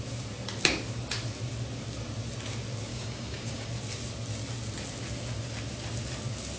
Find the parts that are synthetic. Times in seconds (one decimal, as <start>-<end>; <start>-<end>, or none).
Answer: 2.9-3.7